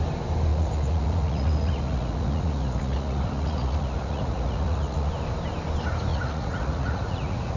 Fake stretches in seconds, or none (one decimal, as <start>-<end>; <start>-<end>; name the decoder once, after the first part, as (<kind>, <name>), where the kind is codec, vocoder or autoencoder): 0.5-5.1 (vocoder, Vocos); 6.1-7.6